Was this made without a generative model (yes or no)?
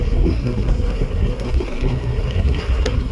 no